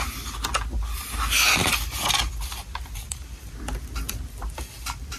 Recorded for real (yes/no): yes